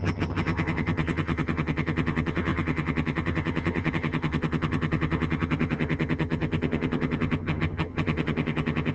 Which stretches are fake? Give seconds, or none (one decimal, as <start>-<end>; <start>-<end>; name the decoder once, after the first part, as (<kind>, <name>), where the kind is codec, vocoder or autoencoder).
0.0-8.9 (vocoder, HiFi-GAN)